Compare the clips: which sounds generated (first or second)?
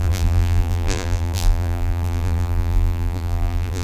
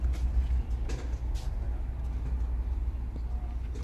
first